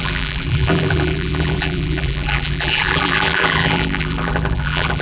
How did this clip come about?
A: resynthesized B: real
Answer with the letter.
A